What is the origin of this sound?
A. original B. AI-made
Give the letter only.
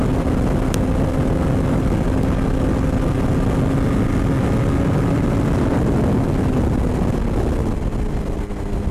A